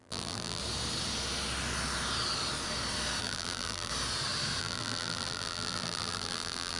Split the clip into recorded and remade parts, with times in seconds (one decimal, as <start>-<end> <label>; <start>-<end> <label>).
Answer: 0.0-0.6 remade; 0.6-3.2 recorded; 3.2-3.9 remade; 3.9-4.6 recorded; 4.6-6.8 remade